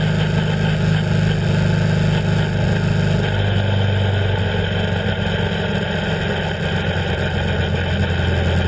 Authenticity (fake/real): real